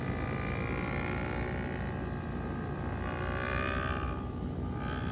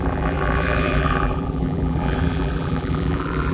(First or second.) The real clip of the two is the first